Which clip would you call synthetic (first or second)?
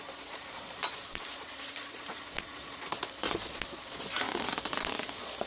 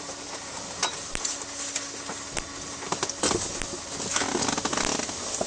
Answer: first